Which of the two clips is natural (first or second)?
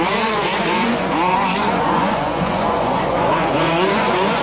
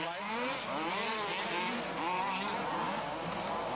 second